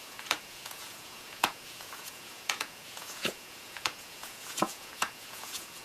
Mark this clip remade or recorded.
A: remade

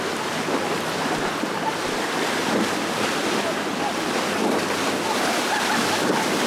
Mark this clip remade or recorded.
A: remade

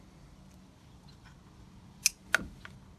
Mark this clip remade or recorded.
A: recorded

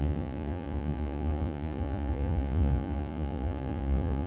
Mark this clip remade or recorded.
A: remade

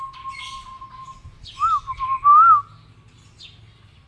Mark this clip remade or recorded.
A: recorded